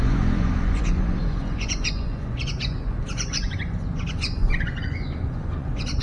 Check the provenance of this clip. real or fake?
fake